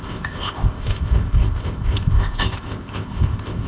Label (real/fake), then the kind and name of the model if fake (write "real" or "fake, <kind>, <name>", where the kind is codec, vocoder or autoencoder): fake, codec, ZipCodec